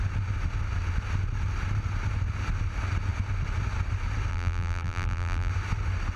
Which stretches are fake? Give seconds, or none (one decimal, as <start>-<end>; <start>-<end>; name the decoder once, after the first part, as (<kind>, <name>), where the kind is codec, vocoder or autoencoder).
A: 4.3-5.5 (vocoder, BigVGAN v2)